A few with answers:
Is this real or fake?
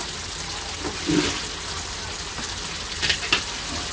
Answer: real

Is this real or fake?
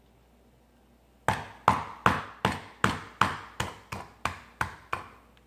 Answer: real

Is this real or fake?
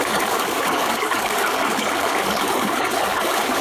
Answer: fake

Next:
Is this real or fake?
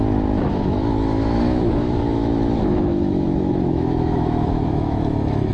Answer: fake